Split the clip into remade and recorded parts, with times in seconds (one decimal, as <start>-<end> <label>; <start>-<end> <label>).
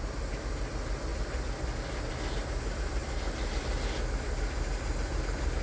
0.0-5.6 recorded